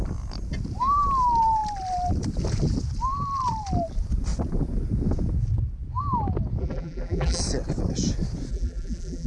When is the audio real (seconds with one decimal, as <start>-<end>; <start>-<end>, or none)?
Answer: 0.0-6.6; 7.4-8.5